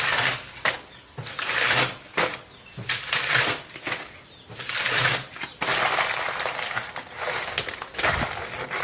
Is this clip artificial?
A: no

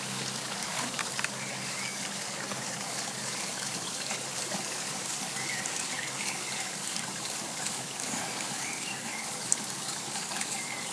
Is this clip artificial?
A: yes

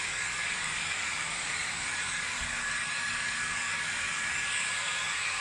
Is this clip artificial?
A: yes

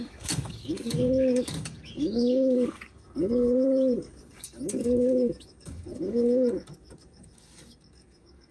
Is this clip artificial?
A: yes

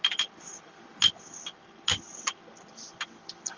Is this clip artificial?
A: no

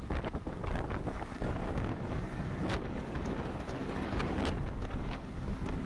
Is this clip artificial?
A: yes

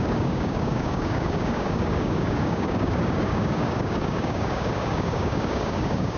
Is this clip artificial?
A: yes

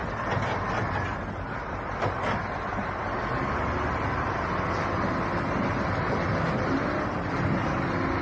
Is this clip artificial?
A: no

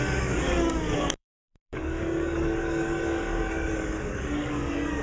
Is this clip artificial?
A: yes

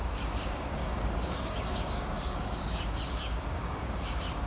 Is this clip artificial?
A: yes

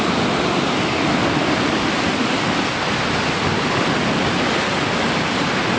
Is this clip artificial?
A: no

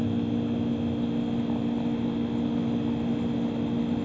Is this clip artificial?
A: no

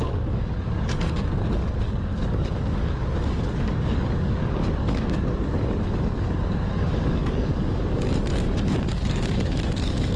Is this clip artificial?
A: yes